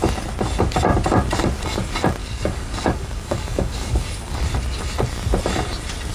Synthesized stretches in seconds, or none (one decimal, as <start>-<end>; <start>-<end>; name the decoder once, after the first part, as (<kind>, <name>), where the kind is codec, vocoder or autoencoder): 2.2-4.4 (codec, DAC)